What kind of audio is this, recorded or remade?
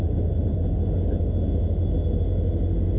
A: recorded